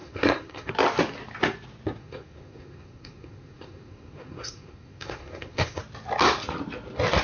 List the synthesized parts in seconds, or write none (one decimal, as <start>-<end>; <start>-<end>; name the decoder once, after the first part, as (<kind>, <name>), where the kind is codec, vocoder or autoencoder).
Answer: 0.0-0.7 (codec, SNAC); 2.0-5.8